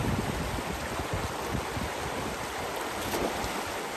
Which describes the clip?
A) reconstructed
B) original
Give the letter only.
B